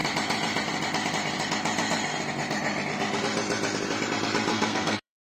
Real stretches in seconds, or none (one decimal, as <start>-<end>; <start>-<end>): 0.0-4.5